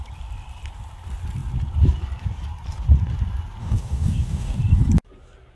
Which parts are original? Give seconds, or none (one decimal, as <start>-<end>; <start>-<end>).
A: 0.0-3.6; 4.6-5.5